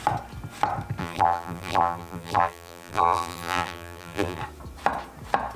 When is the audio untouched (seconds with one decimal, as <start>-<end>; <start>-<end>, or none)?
0.0-1.0; 4.4-5.6